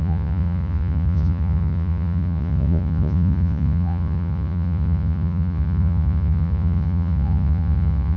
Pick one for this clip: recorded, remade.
remade